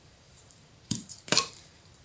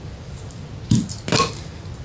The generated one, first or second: first